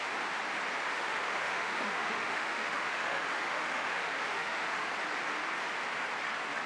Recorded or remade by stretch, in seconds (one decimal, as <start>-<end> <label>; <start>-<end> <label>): 0.0-0.9 recorded; 0.9-4.9 remade; 4.9-6.7 recorded